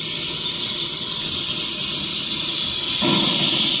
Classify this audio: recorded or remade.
recorded